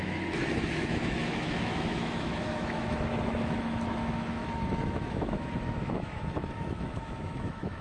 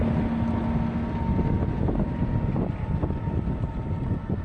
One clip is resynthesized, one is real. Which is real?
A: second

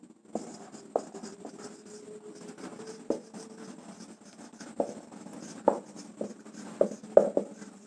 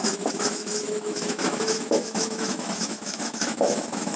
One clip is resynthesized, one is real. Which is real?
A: first